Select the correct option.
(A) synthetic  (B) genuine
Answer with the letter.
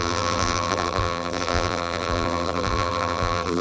A